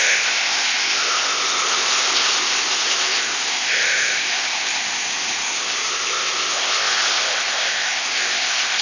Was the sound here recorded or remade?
remade